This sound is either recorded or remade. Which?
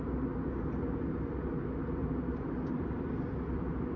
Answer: recorded